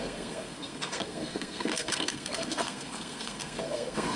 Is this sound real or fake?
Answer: fake